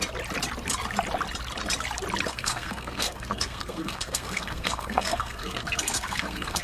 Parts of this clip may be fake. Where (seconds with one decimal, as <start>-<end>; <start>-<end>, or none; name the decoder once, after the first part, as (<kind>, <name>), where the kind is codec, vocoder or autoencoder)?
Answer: 2.3-6.6 (codec, SNAC)